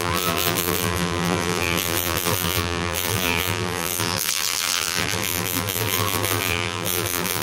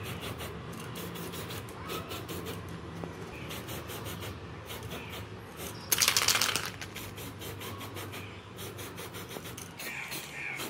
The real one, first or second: second